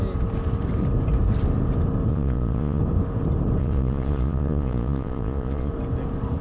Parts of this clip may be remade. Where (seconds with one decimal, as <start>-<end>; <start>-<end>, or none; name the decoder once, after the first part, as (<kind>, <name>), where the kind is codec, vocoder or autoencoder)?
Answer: 2.1-2.8 (vocoder, Vocos); 3.6-5.7